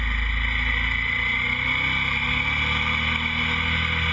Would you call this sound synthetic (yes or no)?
no